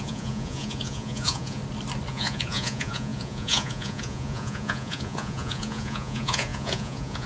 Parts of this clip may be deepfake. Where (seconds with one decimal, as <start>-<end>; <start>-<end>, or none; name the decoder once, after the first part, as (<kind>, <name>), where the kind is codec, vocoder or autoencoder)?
0.0-1.6 (vocoder, Vocos); 2.1-7.3